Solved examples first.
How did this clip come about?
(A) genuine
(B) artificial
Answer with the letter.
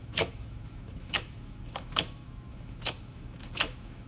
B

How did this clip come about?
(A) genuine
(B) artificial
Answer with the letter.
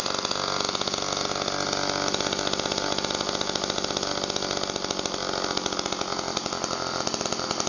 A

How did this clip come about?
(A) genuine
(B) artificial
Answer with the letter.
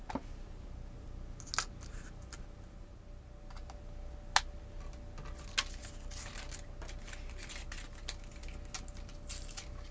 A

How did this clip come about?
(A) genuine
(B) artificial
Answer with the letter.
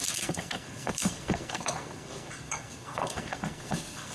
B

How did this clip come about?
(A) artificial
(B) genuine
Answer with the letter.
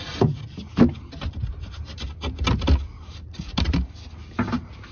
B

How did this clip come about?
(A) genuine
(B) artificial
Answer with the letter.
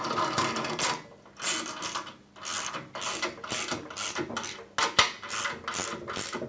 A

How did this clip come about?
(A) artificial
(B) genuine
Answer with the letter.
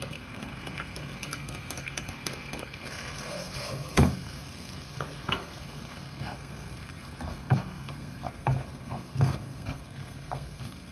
A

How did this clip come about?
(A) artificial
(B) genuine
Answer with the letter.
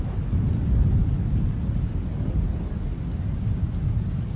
B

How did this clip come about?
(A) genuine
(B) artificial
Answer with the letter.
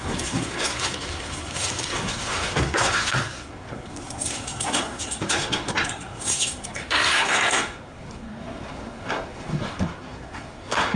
B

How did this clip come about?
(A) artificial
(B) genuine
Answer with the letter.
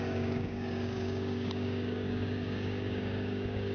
A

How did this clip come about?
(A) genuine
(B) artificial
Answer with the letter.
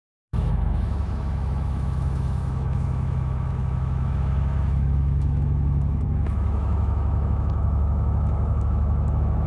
B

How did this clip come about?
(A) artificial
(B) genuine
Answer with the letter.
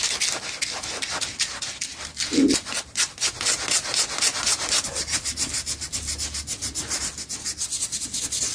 B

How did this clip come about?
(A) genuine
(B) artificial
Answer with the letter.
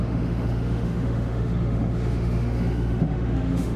B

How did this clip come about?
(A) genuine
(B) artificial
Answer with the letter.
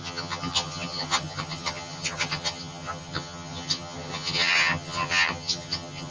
B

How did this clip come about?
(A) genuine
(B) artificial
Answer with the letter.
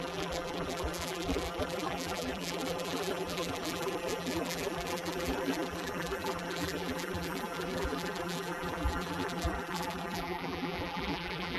B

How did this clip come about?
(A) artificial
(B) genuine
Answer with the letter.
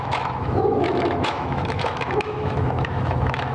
A